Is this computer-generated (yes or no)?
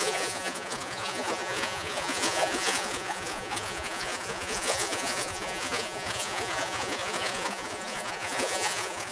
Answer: yes